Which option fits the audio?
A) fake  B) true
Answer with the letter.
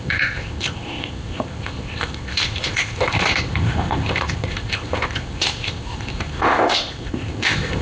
A